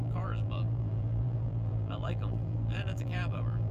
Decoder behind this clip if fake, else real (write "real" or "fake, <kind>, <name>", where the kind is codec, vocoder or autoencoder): fake, vocoder, BigVGAN v2